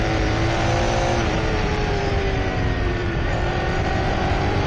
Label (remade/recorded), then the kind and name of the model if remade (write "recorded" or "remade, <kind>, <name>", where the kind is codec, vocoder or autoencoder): remade, vocoder, BigVGAN v2